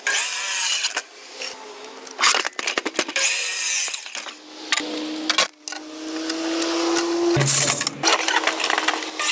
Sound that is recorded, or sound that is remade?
recorded